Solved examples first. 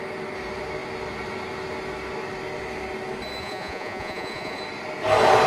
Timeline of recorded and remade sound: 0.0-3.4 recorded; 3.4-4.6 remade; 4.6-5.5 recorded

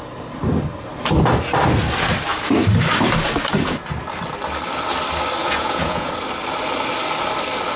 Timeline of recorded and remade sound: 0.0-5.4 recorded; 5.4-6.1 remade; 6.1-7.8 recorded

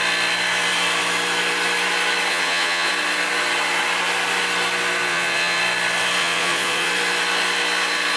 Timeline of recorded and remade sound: 0.0-2.3 recorded; 2.3-2.9 remade; 2.9-5.1 recorded; 5.1-5.6 remade; 5.6-6.2 recorded; 6.2-6.9 remade; 6.9-8.2 recorded